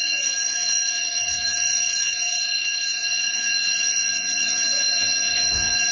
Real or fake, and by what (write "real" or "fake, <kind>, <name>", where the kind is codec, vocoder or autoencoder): fake, vocoder, Vocos